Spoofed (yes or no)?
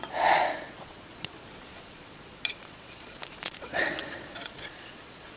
yes